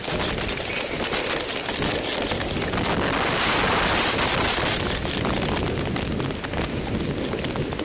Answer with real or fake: real